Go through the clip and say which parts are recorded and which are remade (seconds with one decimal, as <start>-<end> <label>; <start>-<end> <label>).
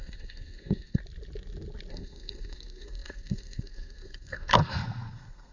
0.0-1.0 remade; 1.0-1.9 recorded; 1.9-5.5 remade